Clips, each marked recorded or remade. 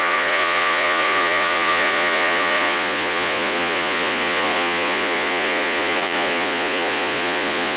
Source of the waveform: remade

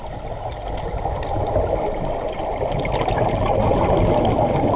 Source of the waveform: recorded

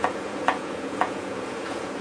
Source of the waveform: remade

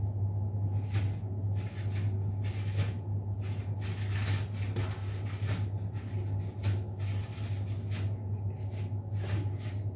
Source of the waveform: recorded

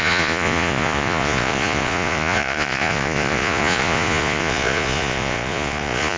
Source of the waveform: remade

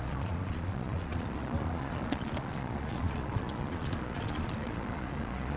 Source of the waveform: remade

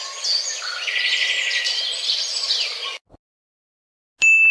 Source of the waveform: recorded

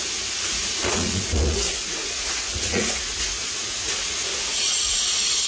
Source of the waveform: remade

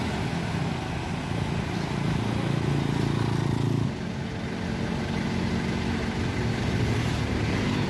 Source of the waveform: recorded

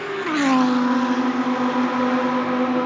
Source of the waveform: recorded